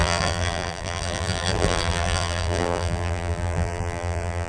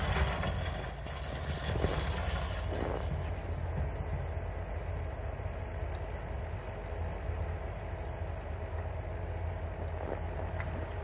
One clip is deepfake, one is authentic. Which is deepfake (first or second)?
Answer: first